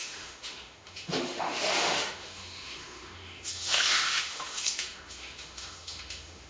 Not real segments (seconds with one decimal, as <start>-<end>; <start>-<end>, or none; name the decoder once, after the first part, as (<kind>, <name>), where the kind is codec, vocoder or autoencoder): 0.0-6.5 (autoencoder, DAC-VAE)

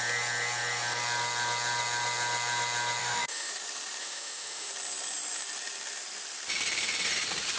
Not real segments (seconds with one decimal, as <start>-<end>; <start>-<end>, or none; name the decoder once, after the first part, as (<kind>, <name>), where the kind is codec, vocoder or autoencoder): 3.0-3.5 (autoencoder, DAC-VAE); 4.0-4.7

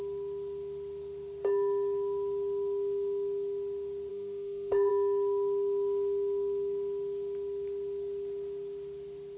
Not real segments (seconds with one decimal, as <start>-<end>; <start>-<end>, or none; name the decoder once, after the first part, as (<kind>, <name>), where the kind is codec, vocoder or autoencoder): 4.1-4.9 (autoencoder, DAC-VAE)

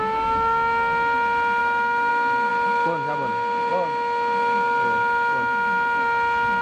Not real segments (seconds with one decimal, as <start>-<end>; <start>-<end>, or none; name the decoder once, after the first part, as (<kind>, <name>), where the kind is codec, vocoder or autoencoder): 1.6-2.1 (autoencoder, DAC-VAE)

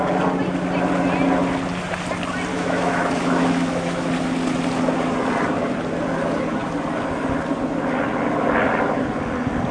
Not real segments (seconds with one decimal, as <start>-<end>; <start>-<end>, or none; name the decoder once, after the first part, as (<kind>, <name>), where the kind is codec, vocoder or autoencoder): 2.5-4.1 (autoencoder, DAC-VAE)

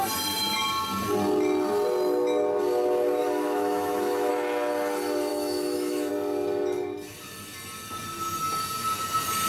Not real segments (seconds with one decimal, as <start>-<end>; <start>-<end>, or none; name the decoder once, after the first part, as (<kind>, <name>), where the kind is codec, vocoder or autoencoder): 3.2-4.3 (autoencoder, DAC-VAE); 5.3-6.1

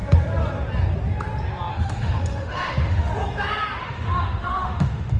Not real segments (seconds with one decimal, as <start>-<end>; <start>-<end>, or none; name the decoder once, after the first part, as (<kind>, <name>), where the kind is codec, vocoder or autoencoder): 1.7-3.1 (autoencoder, DAC-VAE); 3.8-5.2

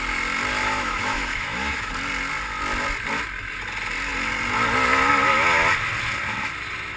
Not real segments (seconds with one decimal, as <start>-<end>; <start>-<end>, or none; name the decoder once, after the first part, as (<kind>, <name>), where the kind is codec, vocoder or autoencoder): 0.6-1.9 (autoencoder, DAC-VAE)